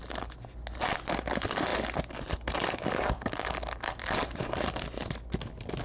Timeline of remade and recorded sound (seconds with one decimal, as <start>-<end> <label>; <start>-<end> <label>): 0.0-5.8 recorded